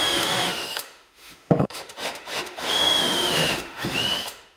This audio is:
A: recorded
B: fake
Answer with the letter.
B